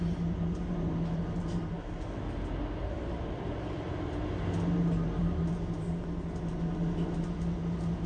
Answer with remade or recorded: recorded